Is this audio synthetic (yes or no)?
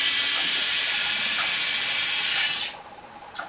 no